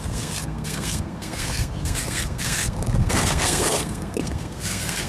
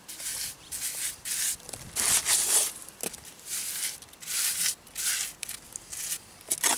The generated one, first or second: first